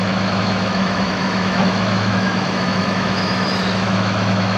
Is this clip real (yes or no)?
no